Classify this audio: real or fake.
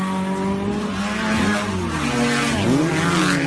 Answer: real